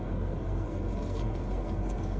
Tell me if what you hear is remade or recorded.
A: remade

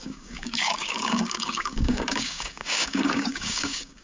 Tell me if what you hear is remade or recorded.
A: remade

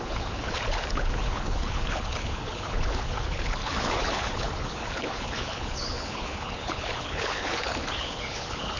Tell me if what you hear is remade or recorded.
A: remade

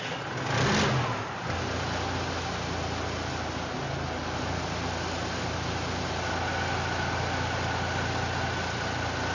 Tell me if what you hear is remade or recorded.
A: recorded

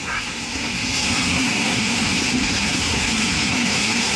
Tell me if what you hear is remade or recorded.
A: remade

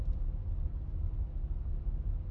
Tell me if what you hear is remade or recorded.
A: recorded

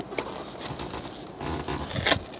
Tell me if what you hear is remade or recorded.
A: recorded